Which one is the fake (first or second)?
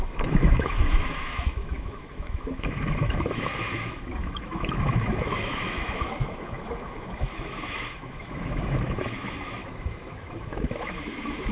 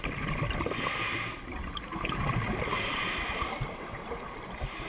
first